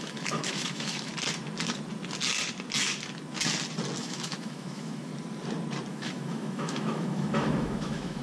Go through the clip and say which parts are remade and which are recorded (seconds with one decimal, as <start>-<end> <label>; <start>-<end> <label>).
0.0-1.1 remade; 1.1-4.0 recorded; 4.0-5.1 remade; 5.1-5.9 recorded; 5.9-8.2 remade